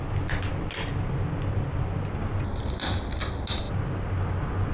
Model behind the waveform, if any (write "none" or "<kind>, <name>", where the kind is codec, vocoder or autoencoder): none